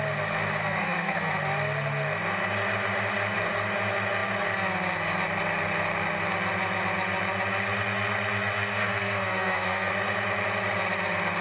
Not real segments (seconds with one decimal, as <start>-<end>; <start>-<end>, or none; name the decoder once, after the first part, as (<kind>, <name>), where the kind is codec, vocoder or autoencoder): 0.6-1.3 (codec, SNAC); 8.8-9.9